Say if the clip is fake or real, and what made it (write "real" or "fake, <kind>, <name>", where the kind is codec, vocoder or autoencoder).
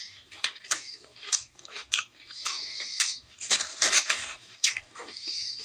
fake, codec, DAC